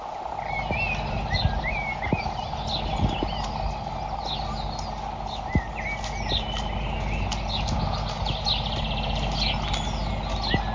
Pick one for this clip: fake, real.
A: real